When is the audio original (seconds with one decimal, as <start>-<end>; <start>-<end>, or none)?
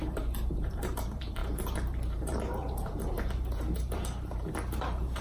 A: none